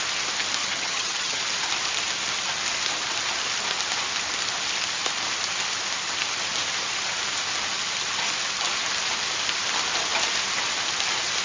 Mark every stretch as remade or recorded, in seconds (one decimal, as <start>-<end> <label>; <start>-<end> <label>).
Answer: 0.0-0.6 recorded; 0.6-1.4 remade; 1.4-11.4 recorded